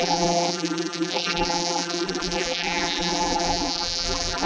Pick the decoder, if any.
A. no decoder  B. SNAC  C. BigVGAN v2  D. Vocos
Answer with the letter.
C